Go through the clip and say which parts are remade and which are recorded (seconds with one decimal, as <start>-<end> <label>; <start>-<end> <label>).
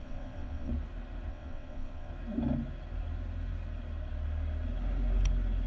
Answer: 0.0-0.7 remade; 0.7-1.3 recorded; 1.3-2.1 remade; 2.1-5.7 recorded